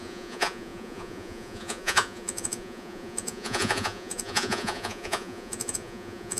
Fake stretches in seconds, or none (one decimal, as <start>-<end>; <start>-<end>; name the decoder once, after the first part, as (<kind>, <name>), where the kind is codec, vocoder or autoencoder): 0.0-6.4 (vocoder, Vocos)